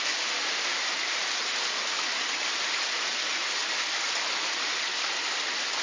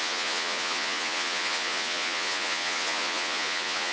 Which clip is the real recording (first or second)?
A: first